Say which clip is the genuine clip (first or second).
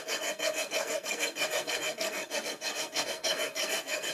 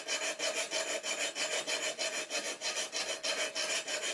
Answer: second